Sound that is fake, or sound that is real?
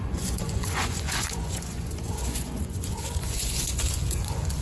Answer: fake